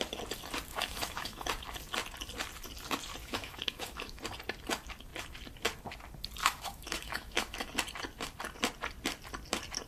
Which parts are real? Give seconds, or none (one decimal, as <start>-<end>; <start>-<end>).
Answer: 0.0-0.7; 1.5-3.2; 4.2-6.4; 7.7-9.9